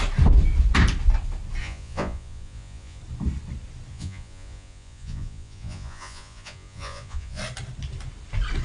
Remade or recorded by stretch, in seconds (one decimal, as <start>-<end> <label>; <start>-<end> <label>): 0.0-1.6 recorded; 1.6-3.0 remade; 3.0-3.9 recorded; 3.9-7.4 remade; 7.4-8.6 recorded